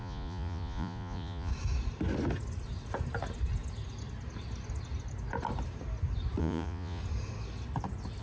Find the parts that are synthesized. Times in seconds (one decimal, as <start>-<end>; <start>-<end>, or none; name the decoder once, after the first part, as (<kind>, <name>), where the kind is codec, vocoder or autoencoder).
0.0-1.5 (vocoder, Vocos); 6.4-7.0